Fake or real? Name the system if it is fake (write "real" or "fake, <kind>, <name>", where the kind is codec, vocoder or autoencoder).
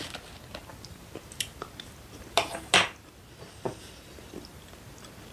real